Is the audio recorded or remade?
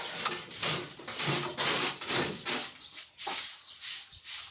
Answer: recorded